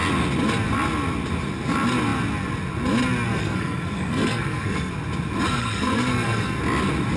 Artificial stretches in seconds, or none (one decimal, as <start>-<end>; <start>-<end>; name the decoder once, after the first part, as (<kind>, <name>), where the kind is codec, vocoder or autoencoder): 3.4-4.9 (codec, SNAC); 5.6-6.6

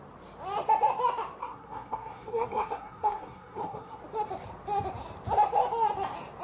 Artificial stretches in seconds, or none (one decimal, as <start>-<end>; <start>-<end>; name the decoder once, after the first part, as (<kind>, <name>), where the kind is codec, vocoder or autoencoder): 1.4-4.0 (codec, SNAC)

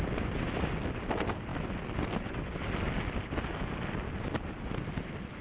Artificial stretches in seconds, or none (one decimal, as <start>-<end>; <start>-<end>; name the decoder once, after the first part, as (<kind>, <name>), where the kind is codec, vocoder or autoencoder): none

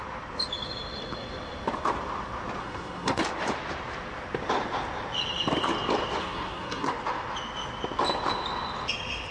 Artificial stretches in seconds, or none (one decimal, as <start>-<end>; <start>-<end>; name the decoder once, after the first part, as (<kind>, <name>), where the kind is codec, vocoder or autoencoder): 2.6-3.2 (codec, SNAC); 6.2-6.9

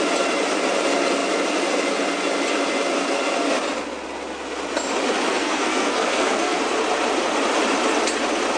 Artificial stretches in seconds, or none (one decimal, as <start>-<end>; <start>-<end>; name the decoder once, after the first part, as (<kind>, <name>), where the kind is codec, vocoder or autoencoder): 5.3-6.6 (codec, SNAC)

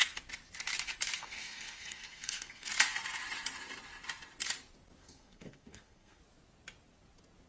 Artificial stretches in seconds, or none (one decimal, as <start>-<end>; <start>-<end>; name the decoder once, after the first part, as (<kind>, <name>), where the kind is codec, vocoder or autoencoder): 1.2-2.7 (codec, SNAC); 5.0-6.2

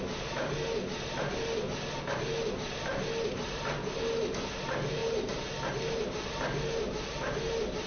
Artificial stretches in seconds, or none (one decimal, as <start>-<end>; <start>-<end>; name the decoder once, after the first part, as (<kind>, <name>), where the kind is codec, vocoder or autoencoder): none